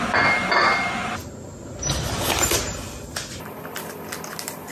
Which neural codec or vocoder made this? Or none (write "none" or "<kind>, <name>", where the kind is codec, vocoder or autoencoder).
none